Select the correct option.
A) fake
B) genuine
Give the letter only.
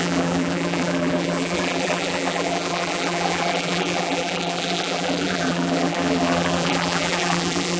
A